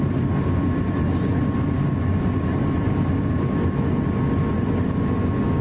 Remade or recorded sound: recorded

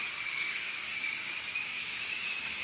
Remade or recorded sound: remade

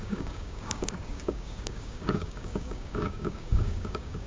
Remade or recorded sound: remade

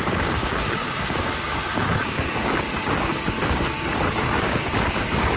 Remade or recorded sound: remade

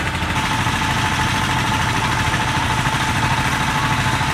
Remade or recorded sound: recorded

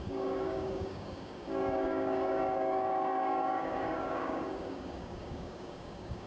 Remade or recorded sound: remade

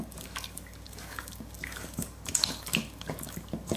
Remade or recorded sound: remade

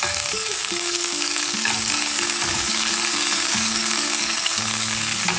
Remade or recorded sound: remade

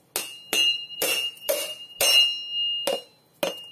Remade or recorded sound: recorded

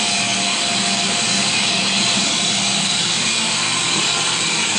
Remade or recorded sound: remade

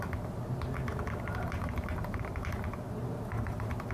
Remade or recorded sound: recorded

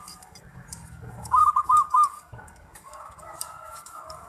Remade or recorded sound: remade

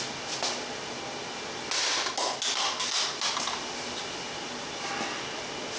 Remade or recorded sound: recorded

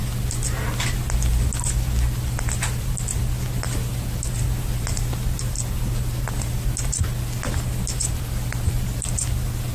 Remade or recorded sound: recorded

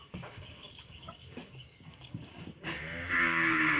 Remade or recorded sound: remade